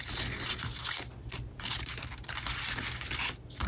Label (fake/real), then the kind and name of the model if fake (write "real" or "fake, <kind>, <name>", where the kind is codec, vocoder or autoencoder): real